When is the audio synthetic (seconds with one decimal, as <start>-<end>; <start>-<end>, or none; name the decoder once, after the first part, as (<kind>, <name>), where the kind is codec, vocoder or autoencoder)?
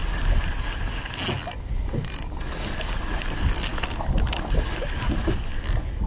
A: none